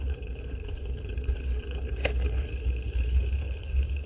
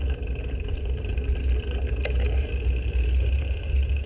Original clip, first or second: second